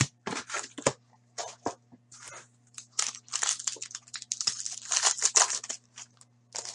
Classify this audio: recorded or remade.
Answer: recorded